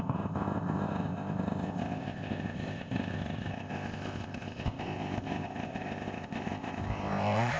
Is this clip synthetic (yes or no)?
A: yes